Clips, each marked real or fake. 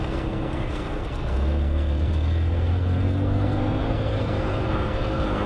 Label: fake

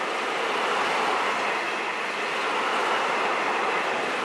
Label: fake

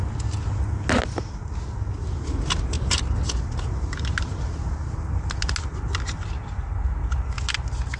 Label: real